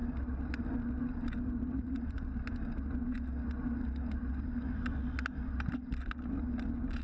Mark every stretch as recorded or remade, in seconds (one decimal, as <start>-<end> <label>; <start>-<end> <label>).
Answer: 0.0-7.0 recorded